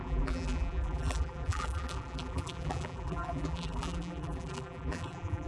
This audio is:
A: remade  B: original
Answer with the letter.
A